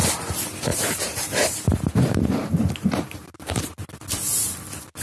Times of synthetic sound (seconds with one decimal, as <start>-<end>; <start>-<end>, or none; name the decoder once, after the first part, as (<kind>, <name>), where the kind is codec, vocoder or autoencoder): 0.7-3.7 (vocoder, BigVGAN v2)